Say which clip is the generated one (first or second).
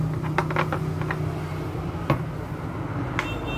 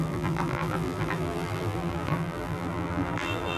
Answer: second